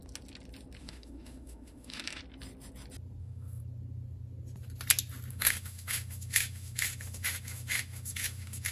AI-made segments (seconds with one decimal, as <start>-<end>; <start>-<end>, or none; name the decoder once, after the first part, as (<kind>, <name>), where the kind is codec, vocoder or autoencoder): 0.8-2.2 (autoencoder, DAC-VAE); 3.2-3.6; 5.3-8.7